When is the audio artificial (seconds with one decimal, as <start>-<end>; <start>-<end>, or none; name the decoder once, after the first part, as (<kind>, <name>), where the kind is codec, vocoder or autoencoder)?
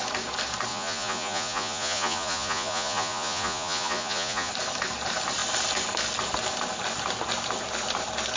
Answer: 0.7-4.5 (vocoder, Vocos)